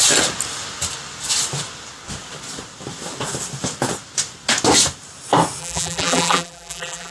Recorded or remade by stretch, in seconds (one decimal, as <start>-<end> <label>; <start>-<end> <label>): 0.0-5.6 recorded; 5.6-7.1 remade